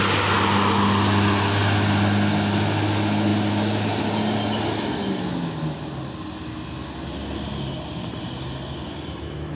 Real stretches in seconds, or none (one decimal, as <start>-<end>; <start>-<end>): 0.0-9.5